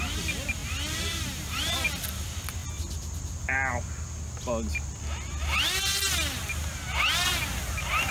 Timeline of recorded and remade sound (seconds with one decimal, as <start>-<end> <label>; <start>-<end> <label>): 0.0-8.1 recorded